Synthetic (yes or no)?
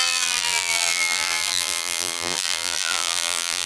yes